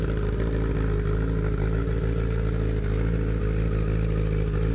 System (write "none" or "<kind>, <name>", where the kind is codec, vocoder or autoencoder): none